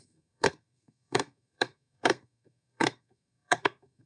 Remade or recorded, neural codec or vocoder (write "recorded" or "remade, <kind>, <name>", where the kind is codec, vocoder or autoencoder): remade, codec, SNAC